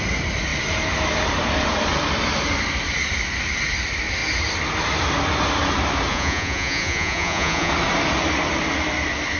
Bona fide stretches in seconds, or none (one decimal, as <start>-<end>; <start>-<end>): 0.0-6.1; 7.7-9.4